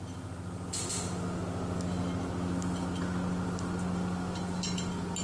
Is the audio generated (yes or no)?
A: no